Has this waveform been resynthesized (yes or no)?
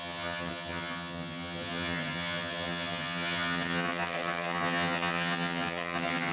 yes